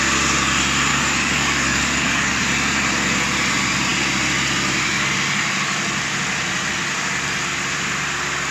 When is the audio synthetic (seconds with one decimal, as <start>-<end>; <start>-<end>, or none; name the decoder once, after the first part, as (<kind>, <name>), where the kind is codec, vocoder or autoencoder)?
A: 0.9-2.4 (codec, DAC)